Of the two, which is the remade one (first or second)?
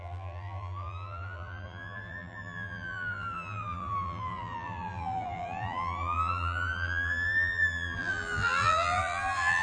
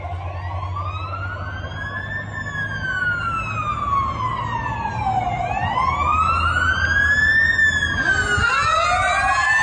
first